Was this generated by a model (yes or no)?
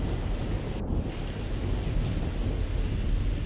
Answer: no